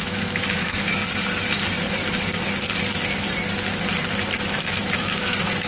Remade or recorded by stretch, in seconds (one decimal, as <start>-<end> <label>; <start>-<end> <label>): 0.0-1.0 remade; 1.0-4.4 recorded; 4.4-5.7 remade

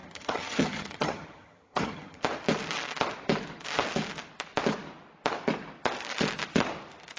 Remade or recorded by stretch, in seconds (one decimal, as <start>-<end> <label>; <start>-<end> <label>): 0.0-2.2 remade; 2.2-7.2 recorded

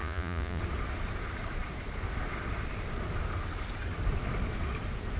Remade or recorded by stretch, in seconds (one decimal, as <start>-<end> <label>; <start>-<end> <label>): 0.0-0.6 remade; 0.6-5.2 recorded

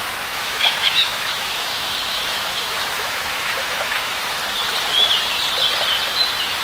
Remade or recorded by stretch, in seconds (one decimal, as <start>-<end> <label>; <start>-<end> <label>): 0.0-4.4 remade; 4.4-6.6 recorded

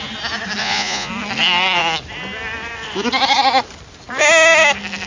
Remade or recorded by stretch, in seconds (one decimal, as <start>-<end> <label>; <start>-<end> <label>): 0.0-0.6 recorded; 0.6-1.1 remade; 1.1-5.1 recorded